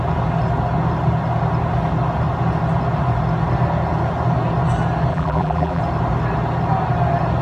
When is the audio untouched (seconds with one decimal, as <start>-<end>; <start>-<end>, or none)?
0.0-5.1; 5.8-7.4